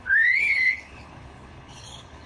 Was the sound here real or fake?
fake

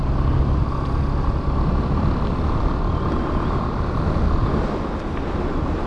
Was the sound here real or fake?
real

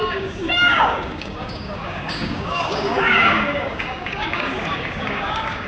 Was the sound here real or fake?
fake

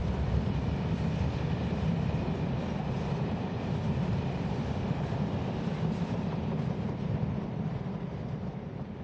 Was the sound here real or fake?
fake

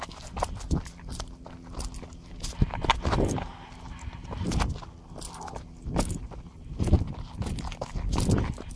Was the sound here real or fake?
real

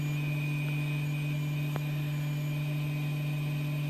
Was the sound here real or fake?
real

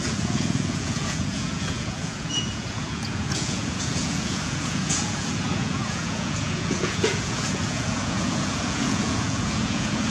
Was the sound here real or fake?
fake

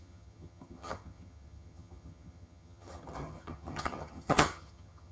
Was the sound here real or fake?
fake